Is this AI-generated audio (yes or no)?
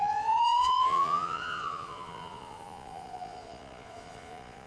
yes